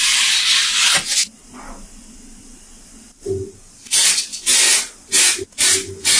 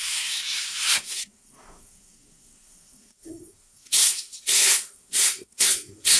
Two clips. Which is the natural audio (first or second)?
first